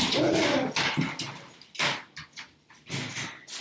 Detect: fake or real real